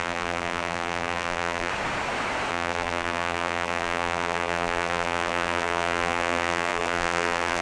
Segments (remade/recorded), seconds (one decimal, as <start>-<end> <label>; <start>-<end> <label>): 0.0-1.7 remade; 1.7-2.5 recorded; 2.5-7.6 remade